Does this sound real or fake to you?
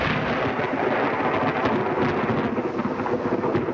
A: real